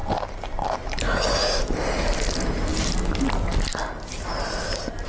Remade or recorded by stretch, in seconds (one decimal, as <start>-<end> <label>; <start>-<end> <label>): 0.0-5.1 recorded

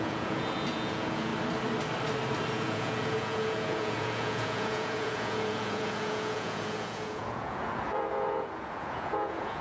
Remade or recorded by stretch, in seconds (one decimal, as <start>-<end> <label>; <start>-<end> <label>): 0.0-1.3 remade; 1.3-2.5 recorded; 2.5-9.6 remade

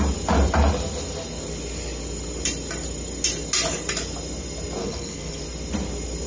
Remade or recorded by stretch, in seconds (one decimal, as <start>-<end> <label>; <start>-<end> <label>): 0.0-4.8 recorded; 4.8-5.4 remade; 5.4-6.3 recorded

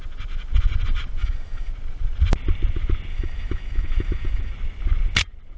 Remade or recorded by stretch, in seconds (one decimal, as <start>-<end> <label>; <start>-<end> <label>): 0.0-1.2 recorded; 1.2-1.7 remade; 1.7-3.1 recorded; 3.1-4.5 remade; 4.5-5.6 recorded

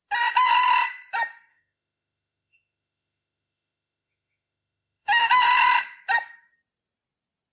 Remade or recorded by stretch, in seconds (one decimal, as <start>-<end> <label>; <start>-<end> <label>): 0.0-1.5 recorded; 1.5-5.3 remade; 5.3-7.5 recorded

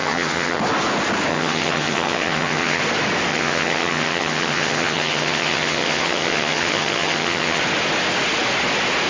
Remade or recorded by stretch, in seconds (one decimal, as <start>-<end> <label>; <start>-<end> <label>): 0.0-0.6 remade; 0.6-1.3 recorded; 1.3-2.8 remade; 2.8-3.3 recorded; 3.3-7.6 remade; 7.6-9.1 recorded